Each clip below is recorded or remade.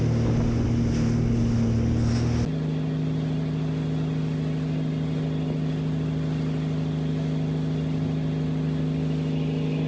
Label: recorded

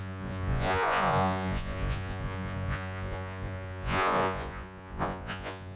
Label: remade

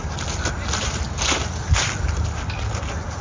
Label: recorded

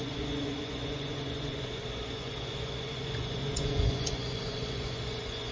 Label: remade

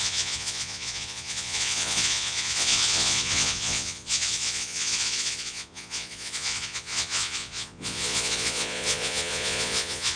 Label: remade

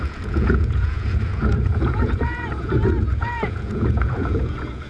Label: remade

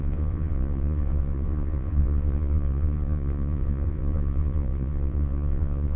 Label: remade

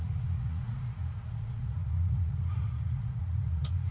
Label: remade